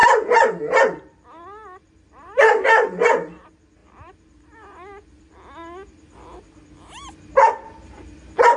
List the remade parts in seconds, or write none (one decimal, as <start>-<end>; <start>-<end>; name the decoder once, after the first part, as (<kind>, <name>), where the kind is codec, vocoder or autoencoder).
none